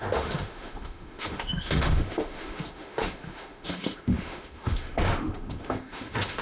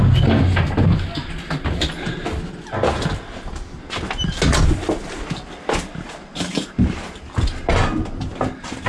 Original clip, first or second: second